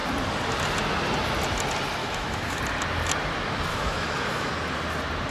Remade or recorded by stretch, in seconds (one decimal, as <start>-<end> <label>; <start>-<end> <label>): 0.0-2.0 recorded; 2.0-2.6 remade; 2.6-3.7 recorded; 3.7-4.5 remade; 4.5-5.3 recorded

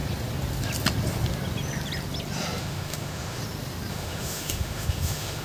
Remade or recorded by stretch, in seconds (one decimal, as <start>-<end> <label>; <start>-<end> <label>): 0.0-2.6 recorded; 2.6-3.4 remade; 3.4-3.9 recorded; 3.9-5.4 remade